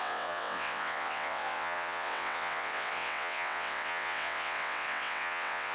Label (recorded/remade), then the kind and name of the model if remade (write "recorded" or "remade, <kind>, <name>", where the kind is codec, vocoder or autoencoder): remade, vocoder, WaveNeXt